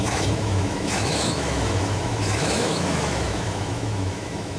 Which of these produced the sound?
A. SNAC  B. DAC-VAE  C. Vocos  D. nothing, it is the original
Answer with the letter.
B